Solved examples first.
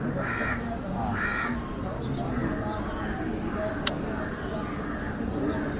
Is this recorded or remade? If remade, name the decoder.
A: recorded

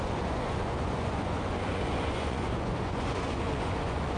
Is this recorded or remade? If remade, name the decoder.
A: remade, vocoder, Vocos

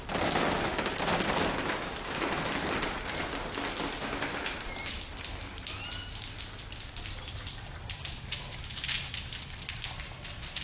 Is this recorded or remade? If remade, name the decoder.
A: recorded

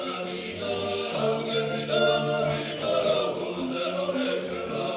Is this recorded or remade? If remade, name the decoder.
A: remade, codec, DAC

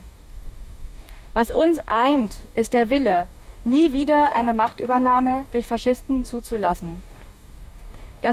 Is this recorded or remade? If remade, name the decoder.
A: remade, codec, DAC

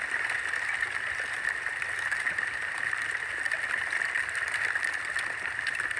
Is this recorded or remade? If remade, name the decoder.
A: recorded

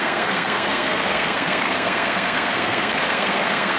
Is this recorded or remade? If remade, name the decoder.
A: remade, codec, SNAC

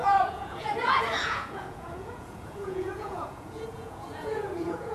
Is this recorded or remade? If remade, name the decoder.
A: remade, vocoder, Vocos